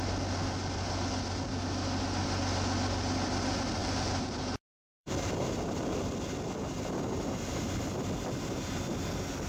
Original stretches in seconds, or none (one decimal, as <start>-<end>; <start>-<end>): 0.0-3.8; 5.8-9.5